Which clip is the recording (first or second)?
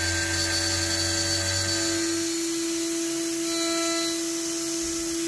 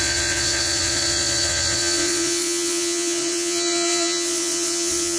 first